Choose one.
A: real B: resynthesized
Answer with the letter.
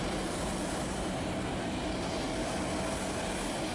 A